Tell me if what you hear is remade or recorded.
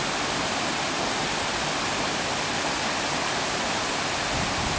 recorded